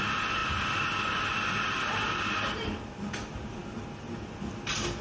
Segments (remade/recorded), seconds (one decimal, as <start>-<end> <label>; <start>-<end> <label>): 0.0-5.0 recorded

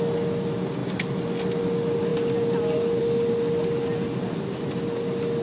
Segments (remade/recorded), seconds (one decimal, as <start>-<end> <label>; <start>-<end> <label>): 0.0-5.4 recorded

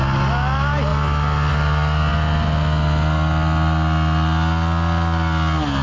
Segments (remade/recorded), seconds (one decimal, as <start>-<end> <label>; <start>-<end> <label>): 0.0-5.8 recorded

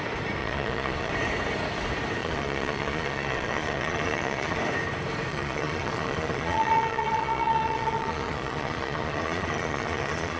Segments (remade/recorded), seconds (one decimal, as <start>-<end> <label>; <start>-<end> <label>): 0.0-0.4 recorded; 0.4-1.1 remade; 1.1-2.2 recorded; 2.2-4.6 remade; 4.6-5.3 recorded; 5.3-10.4 remade

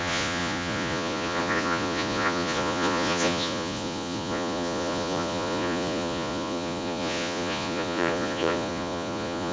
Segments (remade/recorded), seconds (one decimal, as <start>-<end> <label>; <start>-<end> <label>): 0.0-9.5 remade

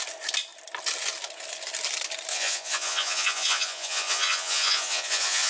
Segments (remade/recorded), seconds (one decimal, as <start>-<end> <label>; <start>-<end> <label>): 0.0-2.3 recorded; 2.3-5.5 remade

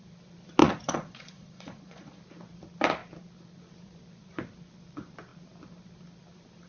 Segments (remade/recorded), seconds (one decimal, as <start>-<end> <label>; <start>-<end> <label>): 0.0-0.6 recorded; 0.6-2.2 remade; 2.2-6.7 recorded